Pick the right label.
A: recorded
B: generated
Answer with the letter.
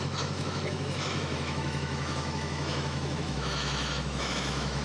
B